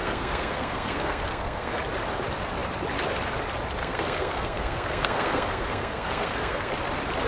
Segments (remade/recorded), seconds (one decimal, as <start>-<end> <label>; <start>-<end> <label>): 0.0-1.7 remade; 1.7-3.8 recorded; 3.8-6.7 remade; 6.7-7.3 recorded